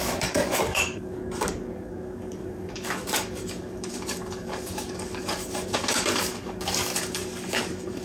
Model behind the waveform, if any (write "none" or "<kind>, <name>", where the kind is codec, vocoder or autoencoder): codec, DAC